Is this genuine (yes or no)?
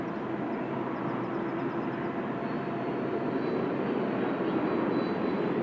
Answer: yes